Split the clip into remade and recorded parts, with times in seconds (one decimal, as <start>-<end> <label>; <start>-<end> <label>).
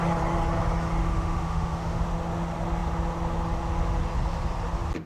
0.0-1.0 recorded; 1.0-2.0 remade; 2.0-5.1 recorded